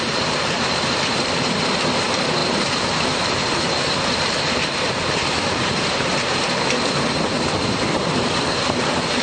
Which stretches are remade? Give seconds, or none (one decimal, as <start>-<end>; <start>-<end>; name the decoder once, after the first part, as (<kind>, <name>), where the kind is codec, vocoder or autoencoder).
0.0-9.2 (vocoder, BigVGAN v2)